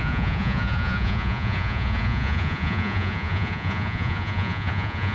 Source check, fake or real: fake